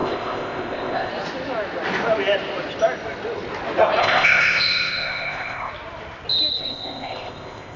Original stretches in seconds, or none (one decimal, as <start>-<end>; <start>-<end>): 1.1-4.0; 5.7-6.6